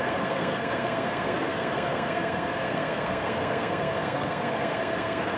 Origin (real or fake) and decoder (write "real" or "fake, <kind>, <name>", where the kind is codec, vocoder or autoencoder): fake, codec, SNAC